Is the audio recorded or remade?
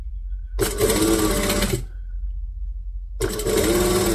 recorded